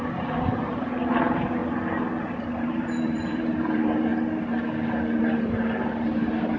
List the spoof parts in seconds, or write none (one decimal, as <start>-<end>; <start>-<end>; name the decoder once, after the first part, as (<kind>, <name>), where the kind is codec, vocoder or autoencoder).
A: 0.0-1.6 (vocoder, BigVGAN v2); 2.2-4.1; 5.2-6.6